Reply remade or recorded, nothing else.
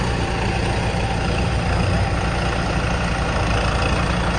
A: recorded